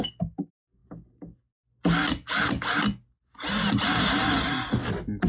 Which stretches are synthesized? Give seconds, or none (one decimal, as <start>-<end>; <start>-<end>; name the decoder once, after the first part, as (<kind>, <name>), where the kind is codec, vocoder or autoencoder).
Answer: none